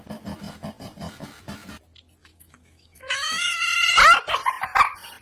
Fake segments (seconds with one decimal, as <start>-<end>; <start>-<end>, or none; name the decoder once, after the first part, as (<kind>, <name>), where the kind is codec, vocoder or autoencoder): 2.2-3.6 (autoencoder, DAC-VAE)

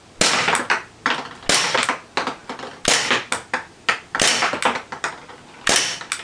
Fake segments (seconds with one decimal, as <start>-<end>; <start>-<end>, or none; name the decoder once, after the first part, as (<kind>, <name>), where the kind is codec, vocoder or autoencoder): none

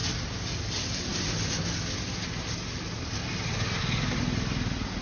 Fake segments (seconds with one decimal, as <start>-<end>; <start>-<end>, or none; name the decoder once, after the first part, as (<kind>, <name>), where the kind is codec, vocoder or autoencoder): none